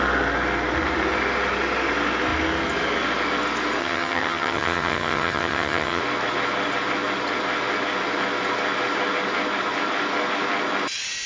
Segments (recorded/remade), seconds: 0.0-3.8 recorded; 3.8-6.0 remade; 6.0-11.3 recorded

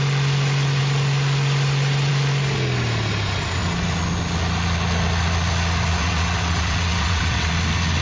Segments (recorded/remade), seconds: 0.0-5.9 recorded; 5.9-7.5 remade; 7.5-8.0 recorded

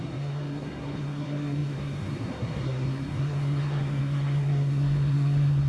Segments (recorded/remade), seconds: 0.0-5.7 remade

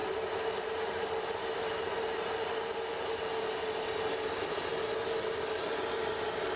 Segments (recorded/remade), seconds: 0.0-6.6 recorded